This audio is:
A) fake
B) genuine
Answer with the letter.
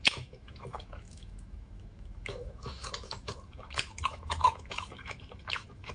A